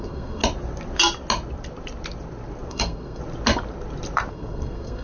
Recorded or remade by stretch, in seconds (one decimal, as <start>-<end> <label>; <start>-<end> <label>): 0.0-0.4 remade; 0.4-2.7 recorded; 2.7-3.2 remade; 3.2-4.3 recorded; 4.3-5.0 remade